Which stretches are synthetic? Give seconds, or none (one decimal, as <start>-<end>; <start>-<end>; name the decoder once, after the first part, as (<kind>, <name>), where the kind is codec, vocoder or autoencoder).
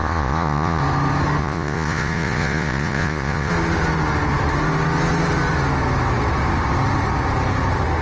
0.0-0.8 (vocoder, Vocos); 1.4-3.5